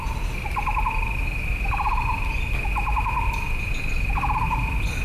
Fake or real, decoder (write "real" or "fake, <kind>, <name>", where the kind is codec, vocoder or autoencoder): real